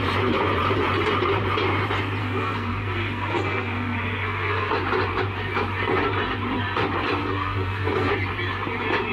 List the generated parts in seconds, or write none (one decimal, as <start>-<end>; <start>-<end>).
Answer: 2.2-4.7; 7.2-8.1